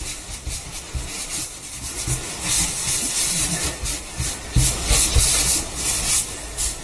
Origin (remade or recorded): recorded